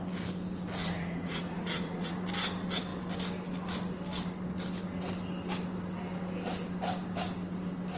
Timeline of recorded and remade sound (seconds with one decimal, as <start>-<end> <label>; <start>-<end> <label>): 0.0-0.8 recorded; 0.8-2.1 remade; 2.1-8.0 recorded